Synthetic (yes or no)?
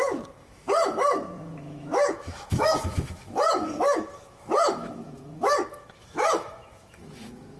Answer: yes